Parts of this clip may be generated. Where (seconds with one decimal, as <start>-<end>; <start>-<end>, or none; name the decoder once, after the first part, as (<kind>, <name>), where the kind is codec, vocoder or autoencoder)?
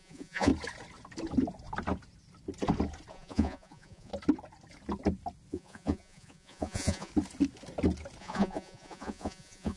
0.0-0.5 (vocoder, Vocos); 3.1-4.1; 5.5-7.1; 8.2-9.8